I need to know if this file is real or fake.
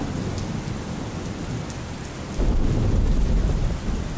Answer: real